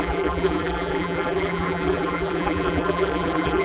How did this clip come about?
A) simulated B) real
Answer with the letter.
A